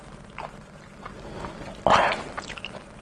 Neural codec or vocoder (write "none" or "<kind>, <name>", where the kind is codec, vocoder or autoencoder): none